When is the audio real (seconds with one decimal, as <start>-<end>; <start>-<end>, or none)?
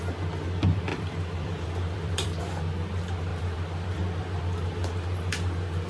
0.0-0.9; 2.4-3.3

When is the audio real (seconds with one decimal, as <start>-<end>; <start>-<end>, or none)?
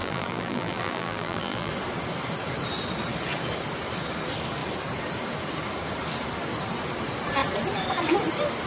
1.7-8.7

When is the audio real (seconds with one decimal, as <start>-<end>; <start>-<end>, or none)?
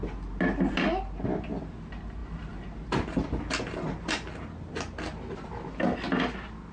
0.0-6.7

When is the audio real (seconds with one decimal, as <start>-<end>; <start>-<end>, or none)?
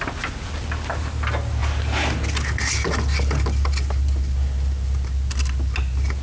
0.0-6.2